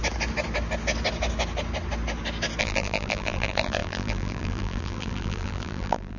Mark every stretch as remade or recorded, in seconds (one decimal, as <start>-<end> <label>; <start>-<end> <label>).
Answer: 0.0-2.6 recorded; 2.6-6.2 remade